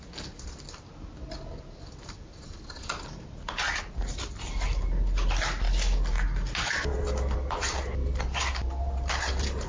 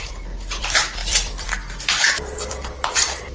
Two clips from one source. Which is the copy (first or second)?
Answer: second